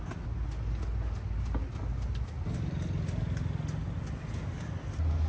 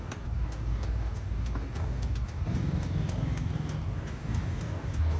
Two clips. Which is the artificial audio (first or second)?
second